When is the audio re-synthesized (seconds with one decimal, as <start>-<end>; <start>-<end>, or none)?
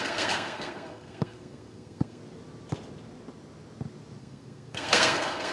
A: 0.0-2.2; 4.2-5.5